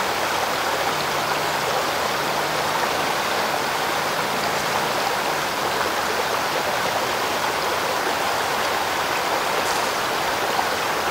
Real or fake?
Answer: real